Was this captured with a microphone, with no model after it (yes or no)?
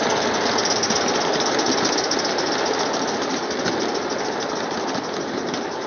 yes